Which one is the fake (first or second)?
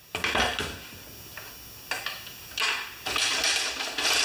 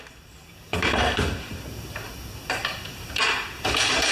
second